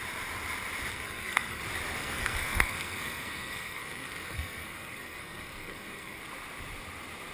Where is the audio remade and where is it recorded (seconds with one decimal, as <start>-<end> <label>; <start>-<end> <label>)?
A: 0.0-0.9 recorded; 0.9-1.6 remade; 1.6-2.0 recorded; 2.0-6.2 remade; 6.2-7.3 recorded